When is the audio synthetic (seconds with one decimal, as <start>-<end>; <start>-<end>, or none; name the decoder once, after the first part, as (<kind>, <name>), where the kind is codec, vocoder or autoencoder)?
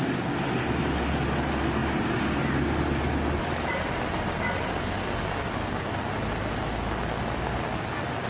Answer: none